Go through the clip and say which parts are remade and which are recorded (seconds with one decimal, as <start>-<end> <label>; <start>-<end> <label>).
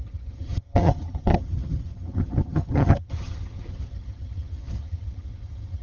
0.0-5.8 remade